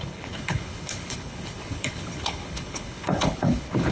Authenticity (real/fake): fake